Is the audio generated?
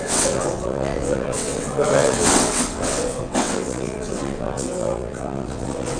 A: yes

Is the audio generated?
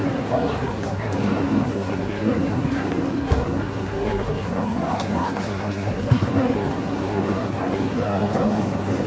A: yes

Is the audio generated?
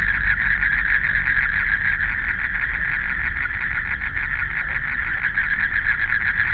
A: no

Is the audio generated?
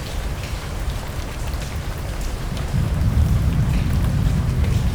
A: yes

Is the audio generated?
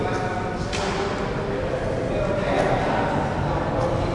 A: no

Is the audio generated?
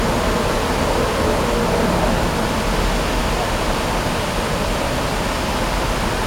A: no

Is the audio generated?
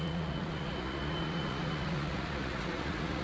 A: yes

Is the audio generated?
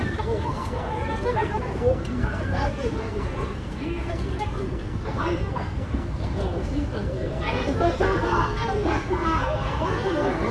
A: yes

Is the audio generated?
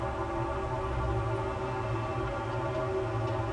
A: no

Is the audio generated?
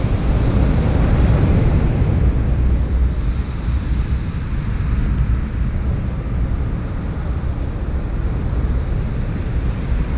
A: no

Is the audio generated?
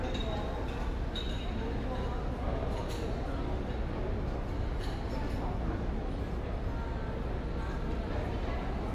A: no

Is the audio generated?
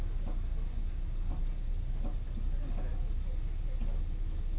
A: no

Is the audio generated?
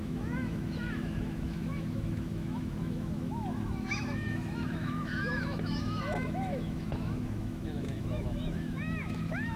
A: yes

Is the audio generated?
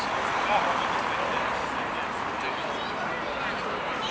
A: no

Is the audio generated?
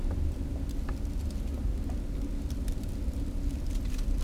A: no